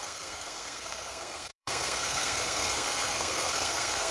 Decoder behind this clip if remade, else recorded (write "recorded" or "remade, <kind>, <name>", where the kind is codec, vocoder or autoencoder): remade, codec, SNAC